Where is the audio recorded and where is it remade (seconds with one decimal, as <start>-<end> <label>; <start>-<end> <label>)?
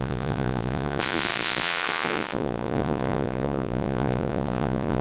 0.0-5.0 remade